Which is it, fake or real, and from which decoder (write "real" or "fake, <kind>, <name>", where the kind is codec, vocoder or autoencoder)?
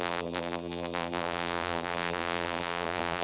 fake, vocoder, BigVGAN v2